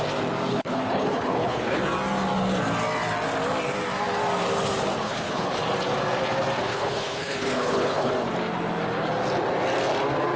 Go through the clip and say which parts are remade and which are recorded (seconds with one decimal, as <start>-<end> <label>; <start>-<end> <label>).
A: 0.0-0.5 recorded; 0.5-1.8 remade; 1.8-5.0 recorded; 5.0-5.6 remade; 5.6-6.7 recorded; 6.7-8.1 remade; 8.1-10.4 recorded